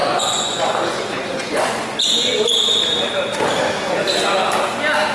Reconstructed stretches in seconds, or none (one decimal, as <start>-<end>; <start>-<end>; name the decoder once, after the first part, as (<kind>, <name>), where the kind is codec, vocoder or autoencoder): 0.0-2.0 (vocoder, Vocos)